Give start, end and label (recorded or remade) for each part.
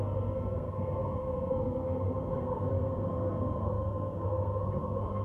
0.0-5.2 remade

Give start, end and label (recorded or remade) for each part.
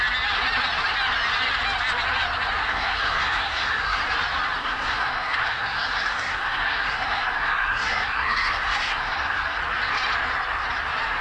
0.0-2.6 recorded; 2.6-4.0 remade; 4.0-4.6 recorded; 4.6-9.6 remade; 9.6-11.2 recorded